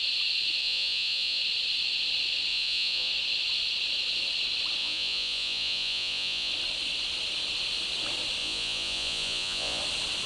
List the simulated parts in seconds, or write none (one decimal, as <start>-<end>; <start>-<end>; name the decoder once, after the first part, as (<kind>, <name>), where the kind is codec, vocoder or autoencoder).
0.6-1.4 (vocoder, Vocos); 2.5-3.1; 4.8-6.5; 8.4-9.8